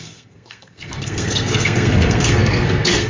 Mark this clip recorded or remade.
remade